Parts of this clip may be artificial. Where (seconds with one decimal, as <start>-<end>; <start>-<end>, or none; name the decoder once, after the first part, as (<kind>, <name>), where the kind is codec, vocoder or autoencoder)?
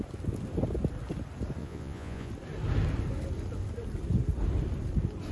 1.6-2.3 (vocoder, Vocos)